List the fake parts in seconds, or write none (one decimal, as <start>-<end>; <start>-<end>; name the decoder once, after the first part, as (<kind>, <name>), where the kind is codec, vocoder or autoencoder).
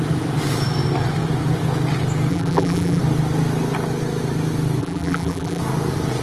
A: 2.3-3.0 (vocoder, BigVGAN v2); 4.8-5.6